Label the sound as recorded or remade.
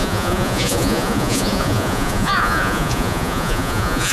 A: remade